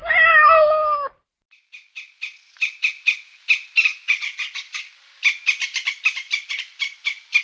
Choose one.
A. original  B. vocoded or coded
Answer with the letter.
A